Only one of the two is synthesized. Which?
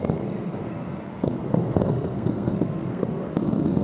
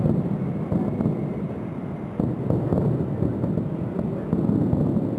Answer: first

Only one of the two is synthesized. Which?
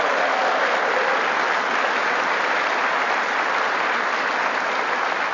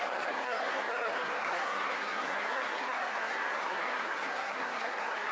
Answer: second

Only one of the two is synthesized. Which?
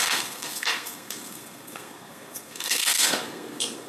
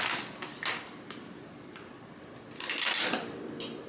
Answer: first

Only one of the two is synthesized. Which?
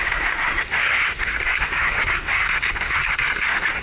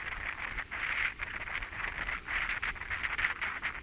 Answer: first